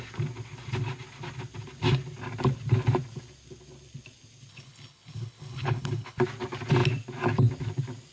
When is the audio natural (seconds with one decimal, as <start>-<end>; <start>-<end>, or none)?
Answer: 0.0-4.5; 6.2-8.1